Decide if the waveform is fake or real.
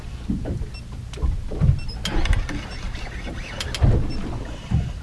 real